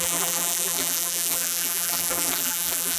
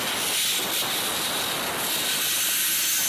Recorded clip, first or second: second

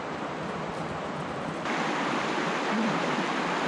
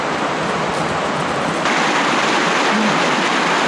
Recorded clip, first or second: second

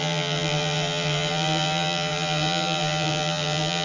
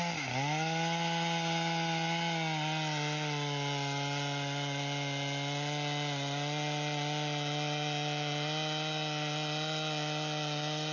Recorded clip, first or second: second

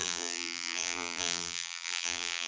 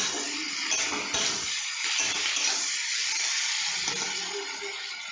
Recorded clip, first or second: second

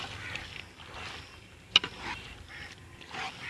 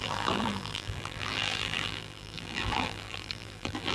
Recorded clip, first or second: first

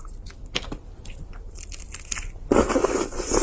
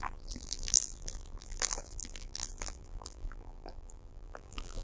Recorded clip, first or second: first